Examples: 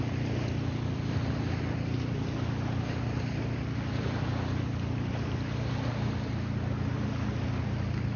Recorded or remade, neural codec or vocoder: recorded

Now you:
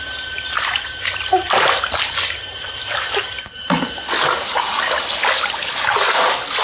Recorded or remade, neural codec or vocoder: recorded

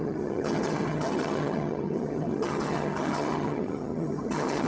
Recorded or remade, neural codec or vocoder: remade, vocoder, HiFi-GAN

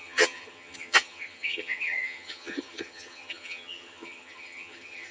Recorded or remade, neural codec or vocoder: remade, vocoder, HiFi-GAN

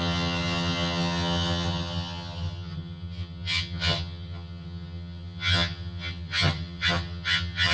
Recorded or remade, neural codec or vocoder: remade, vocoder, HiFi-GAN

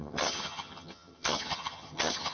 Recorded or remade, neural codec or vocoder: remade, vocoder, HiFi-GAN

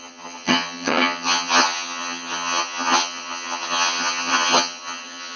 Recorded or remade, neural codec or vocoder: remade, vocoder, HiFi-GAN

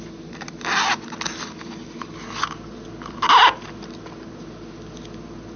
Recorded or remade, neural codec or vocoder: recorded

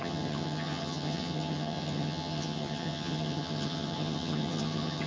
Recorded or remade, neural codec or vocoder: remade, vocoder, HiFi-GAN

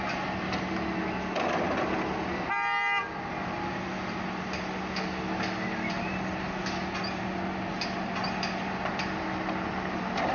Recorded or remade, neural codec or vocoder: recorded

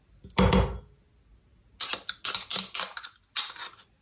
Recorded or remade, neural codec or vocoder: recorded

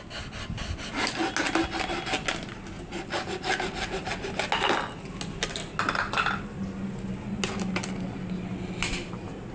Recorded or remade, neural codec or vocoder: recorded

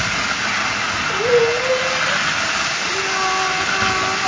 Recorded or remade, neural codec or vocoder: recorded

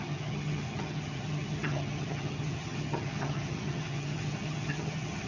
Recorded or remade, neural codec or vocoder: remade, vocoder, HiFi-GAN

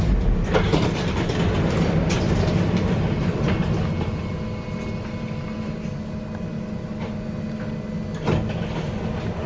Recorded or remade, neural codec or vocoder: recorded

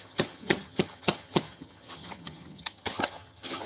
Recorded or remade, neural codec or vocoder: remade, vocoder, HiFi-GAN